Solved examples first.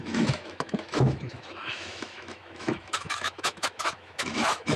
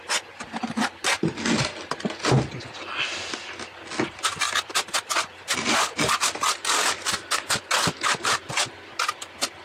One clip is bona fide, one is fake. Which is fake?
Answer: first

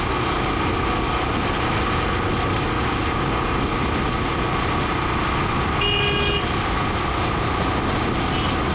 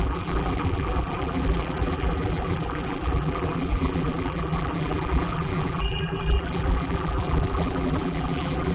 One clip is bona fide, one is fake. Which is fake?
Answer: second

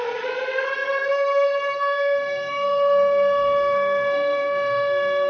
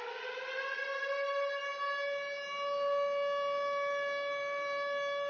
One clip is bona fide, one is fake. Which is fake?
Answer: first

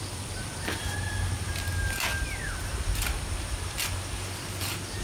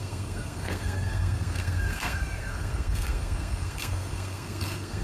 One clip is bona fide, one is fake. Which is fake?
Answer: second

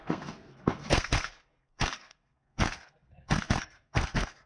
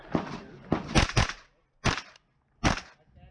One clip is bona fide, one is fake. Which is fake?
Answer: first